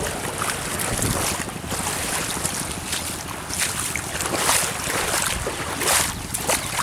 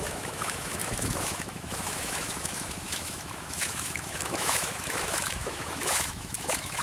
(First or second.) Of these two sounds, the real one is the first